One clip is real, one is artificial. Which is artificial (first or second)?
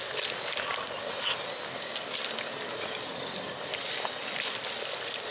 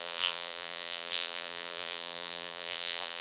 second